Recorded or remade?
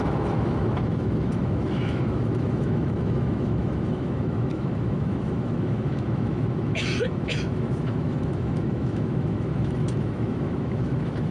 remade